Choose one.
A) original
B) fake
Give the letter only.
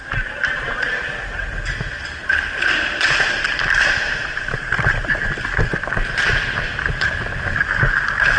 A